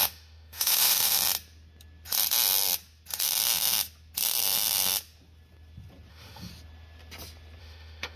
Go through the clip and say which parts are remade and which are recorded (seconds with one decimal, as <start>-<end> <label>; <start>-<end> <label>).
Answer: 0.0-1.2 remade; 1.2-6.1 recorded; 6.1-6.5 remade; 6.5-7.6 recorded; 7.6-8.2 remade

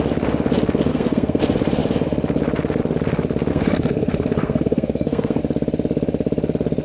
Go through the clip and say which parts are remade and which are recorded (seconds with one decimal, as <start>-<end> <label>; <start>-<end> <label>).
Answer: 0.0-0.9 recorded; 0.9-1.4 remade; 1.4-3.5 recorded; 3.5-5.4 remade; 5.4-6.8 recorded

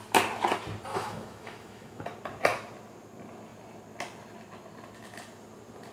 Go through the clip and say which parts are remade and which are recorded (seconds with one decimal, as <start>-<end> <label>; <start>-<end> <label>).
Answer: 0.0-0.9 recorded; 0.9-2.0 remade; 2.0-5.9 recorded

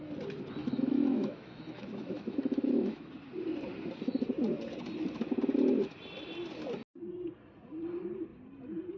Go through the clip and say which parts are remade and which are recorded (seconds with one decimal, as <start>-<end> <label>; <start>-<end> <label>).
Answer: 0.0-0.6 recorded; 0.6-3.1 remade; 3.1-9.0 recorded

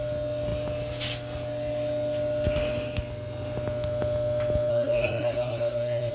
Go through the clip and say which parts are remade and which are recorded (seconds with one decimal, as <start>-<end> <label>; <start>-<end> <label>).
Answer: 0.0-4.7 recorded; 4.7-6.1 remade

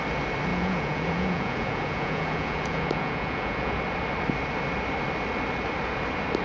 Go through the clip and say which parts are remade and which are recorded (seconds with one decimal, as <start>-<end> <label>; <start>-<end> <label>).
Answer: 0.0-0.5 recorded; 0.5-3.8 remade; 3.8-6.4 recorded

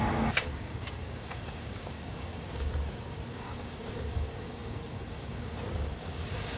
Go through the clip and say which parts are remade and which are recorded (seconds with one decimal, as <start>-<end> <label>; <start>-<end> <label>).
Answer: 0.0-6.6 remade